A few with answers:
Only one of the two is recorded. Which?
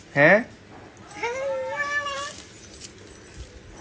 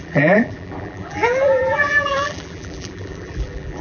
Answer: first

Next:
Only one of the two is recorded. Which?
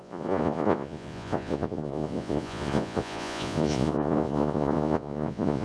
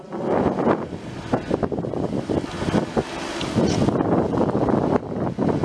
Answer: second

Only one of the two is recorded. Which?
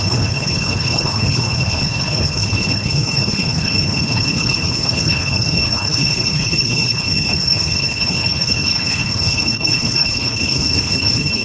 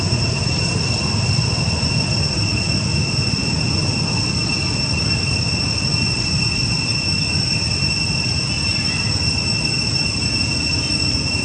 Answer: second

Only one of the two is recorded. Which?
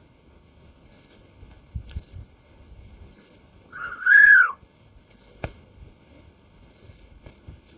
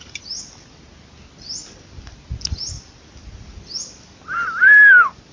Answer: second